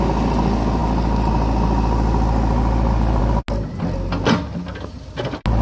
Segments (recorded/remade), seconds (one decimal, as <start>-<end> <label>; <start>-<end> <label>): 0.0-5.6 recorded